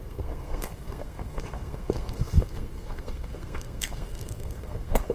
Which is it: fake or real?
fake